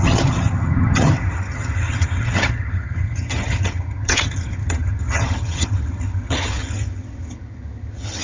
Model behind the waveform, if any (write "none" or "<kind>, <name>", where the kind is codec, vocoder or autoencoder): vocoder, HiFi-GAN